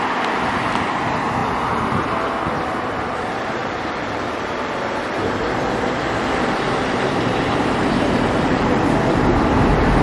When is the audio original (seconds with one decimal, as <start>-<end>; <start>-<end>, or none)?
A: 0.0-3.6; 8.8-10.0